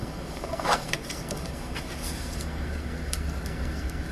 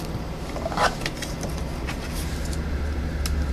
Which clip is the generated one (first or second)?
first